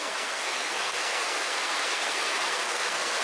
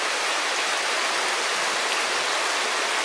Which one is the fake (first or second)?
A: first